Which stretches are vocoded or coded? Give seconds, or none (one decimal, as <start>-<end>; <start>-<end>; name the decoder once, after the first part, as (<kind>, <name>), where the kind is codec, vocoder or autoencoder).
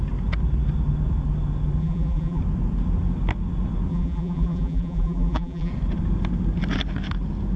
1.8-2.4 (vocoder, BigVGAN v2); 3.9-5.7